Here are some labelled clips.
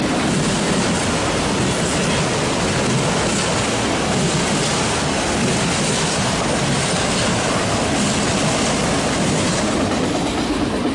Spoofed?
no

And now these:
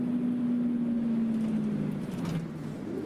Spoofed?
no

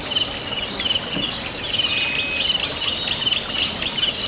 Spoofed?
no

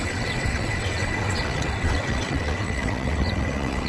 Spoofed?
yes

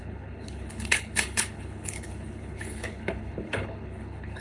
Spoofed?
yes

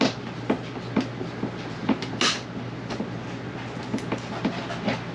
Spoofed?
no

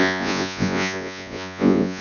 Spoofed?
yes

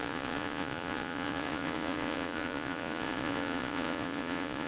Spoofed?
yes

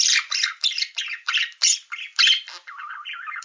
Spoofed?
no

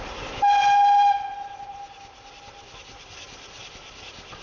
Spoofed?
no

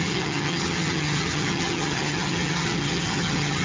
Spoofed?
yes